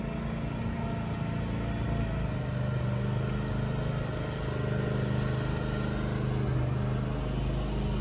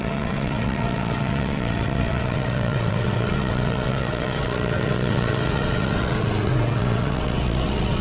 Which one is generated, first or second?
second